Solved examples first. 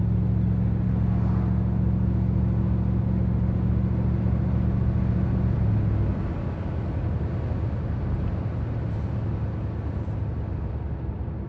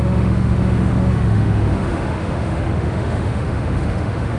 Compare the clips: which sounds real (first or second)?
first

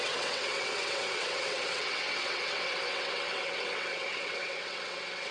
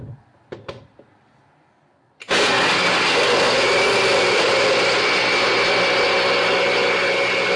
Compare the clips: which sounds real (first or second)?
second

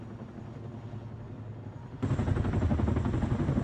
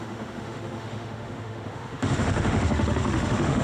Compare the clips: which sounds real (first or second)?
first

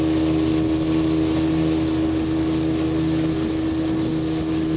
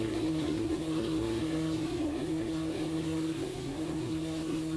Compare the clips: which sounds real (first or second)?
first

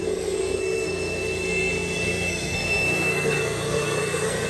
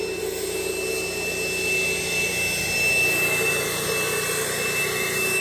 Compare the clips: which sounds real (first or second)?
second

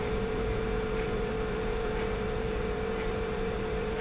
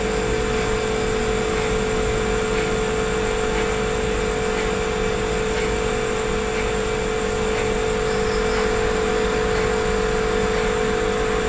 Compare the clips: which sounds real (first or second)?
second